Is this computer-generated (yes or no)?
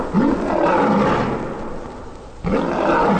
no